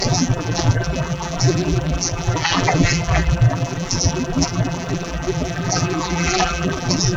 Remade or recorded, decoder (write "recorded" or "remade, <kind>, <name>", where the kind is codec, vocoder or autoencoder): remade, vocoder, BigVGAN v2